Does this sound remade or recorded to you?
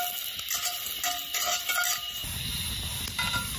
recorded